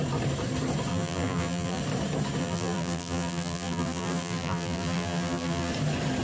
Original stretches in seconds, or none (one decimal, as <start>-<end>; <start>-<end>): 0.0-0.9; 1.8-2.4; 5.7-6.2